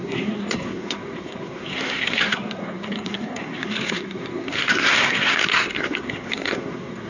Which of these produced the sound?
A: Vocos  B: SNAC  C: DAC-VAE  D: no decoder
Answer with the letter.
B